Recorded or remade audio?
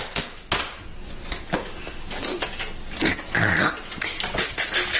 recorded